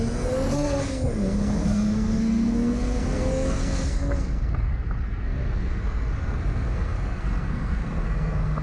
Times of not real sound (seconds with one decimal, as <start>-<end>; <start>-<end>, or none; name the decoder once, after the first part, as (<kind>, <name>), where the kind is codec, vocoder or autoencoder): 0.0-8.6 (codec, SNAC)